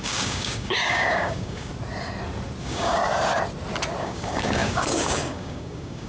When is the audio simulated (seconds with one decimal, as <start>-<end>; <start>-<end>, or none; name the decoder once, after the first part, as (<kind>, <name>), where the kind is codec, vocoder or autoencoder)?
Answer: 0.0-1.7 (codec, DAC); 2.6-3.0; 4.0-6.1